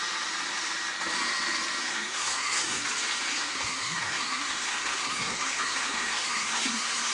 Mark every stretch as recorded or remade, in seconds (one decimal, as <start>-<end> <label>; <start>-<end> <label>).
0.0-1.8 recorded; 1.8-2.8 remade; 2.8-3.3 recorded; 3.3-7.1 remade

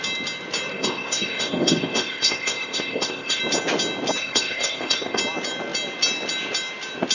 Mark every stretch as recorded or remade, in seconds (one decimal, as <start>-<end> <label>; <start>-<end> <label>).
0.0-0.7 recorded; 0.7-3.4 remade; 3.4-4.2 recorded; 4.2-5.2 remade; 5.2-7.1 recorded

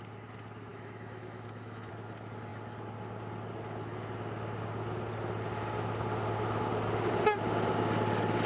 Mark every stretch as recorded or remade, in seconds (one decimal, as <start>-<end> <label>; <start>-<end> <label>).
0.0-0.7 recorded; 0.7-1.9 remade; 1.9-8.5 recorded

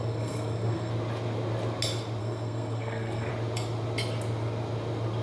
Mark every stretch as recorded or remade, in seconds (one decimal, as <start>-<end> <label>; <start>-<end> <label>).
0.0-0.9 remade; 0.9-2.2 recorded; 2.2-3.3 remade; 3.3-5.2 recorded

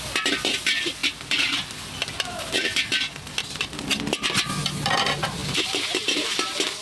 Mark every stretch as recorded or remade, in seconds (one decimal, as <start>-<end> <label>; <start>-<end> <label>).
0.0-5.4 recorded; 5.4-6.3 remade; 6.3-6.8 recorded

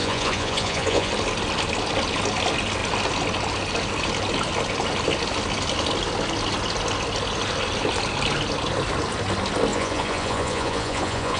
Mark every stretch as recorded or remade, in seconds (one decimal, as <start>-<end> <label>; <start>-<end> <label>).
0.0-1.1 remade; 1.1-9.7 recorded; 9.7-11.4 remade